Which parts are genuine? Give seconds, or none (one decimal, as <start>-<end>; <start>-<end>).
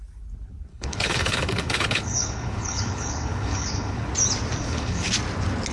0.0-0.7; 4.1-4.6; 5.1-5.7